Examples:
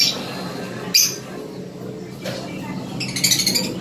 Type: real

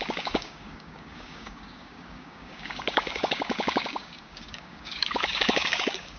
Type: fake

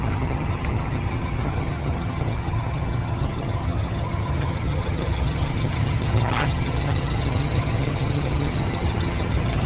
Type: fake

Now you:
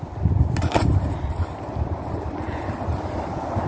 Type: real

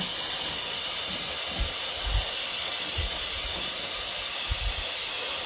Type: real